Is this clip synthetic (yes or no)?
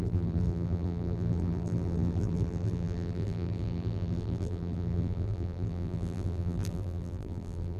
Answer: yes